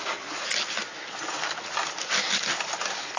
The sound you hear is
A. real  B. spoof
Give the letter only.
A